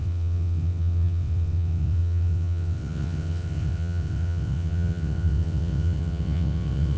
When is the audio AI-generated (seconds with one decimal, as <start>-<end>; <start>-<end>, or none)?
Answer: 0.0-7.0